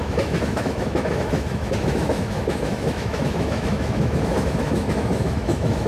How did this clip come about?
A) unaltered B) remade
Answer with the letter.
B